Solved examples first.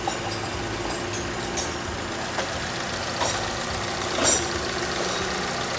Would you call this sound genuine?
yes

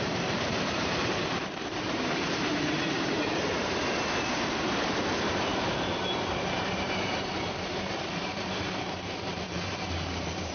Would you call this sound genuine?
no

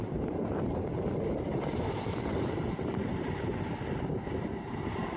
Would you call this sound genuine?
no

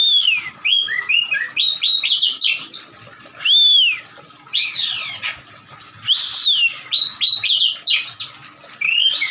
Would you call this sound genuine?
yes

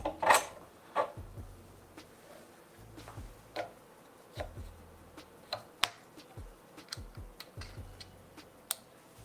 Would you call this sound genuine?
yes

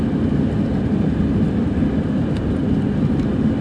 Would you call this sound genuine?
yes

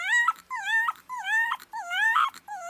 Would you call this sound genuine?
no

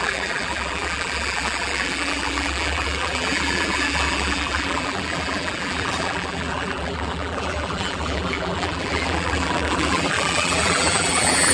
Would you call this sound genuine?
no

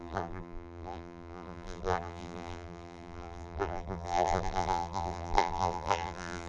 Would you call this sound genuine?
no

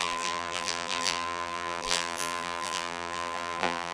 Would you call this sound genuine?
no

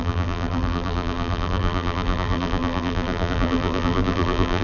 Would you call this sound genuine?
no